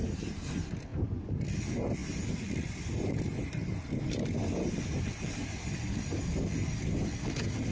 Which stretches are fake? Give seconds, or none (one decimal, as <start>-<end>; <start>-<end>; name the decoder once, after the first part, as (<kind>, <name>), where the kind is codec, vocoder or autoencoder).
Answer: none